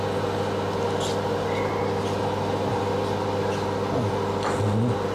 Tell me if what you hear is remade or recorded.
recorded